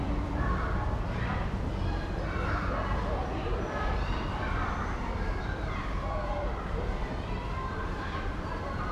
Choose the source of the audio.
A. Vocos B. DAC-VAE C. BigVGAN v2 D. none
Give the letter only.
C